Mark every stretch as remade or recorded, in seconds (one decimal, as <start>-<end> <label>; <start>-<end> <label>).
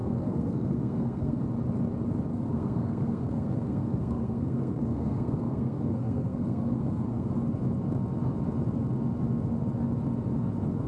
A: 0.0-1.4 remade; 1.4-2.3 recorded; 2.3-7.3 remade; 7.3-10.9 recorded